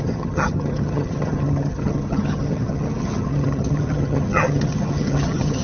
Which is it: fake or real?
fake